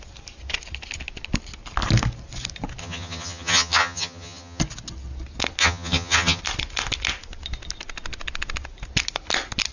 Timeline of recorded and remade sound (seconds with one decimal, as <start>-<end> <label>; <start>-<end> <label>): 0.0-2.8 recorded; 2.8-4.6 remade; 4.6-5.6 recorded; 5.6-6.4 remade; 6.4-9.7 recorded